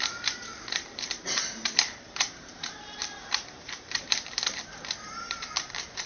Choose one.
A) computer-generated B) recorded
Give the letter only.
A